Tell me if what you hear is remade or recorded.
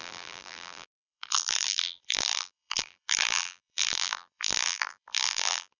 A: remade